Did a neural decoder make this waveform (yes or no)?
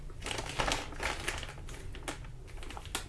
no